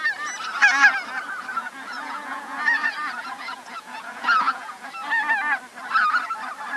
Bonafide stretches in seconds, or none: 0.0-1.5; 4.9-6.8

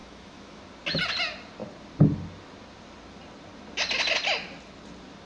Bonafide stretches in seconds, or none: 0.6-5.3

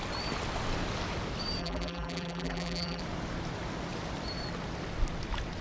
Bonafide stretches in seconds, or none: 0.0-1.6; 3.0-5.6

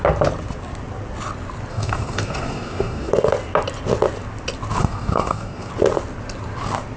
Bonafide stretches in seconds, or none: 0.0-1.7; 3.1-4.8; 5.7-7.0

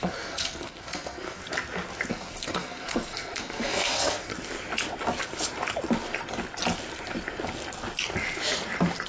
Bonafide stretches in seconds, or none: 1.4-2.1; 4.3-9.1